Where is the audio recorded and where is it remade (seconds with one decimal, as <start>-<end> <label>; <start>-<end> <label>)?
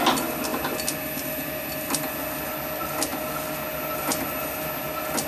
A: 0.0-5.3 recorded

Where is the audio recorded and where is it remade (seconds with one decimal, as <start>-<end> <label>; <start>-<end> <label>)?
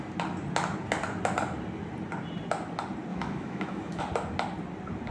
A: 0.0-3.1 recorded; 3.1-4.0 remade; 4.0-5.1 recorded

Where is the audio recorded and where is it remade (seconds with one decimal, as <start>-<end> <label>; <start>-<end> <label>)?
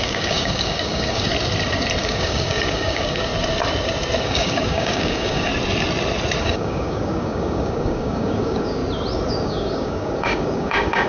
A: 0.0-1.3 remade; 1.3-2.0 recorded; 2.0-3.3 remade; 3.3-4.2 recorded; 4.2-5.5 remade; 5.5-6.4 recorded; 6.4-8.8 remade; 8.8-9.3 recorded; 9.3-11.1 remade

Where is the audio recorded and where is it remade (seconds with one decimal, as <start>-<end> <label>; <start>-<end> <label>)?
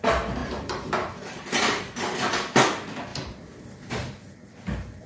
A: 0.0-0.4 recorded; 0.4-2.0 remade; 2.0-3.1 recorded; 3.1-3.9 remade; 3.9-5.1 recorded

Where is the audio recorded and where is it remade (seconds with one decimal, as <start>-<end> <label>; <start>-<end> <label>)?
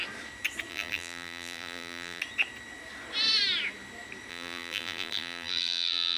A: 0.0-0.7 recorded; 0.7-2.2 remade; 2.2-4.3 recorded; 4.3-6.2 remade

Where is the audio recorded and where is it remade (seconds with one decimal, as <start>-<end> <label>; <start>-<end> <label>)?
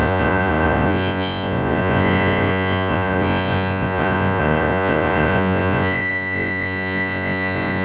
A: 0.0-7.8 remade